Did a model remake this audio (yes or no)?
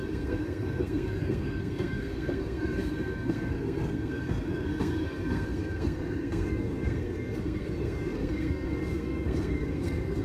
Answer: yes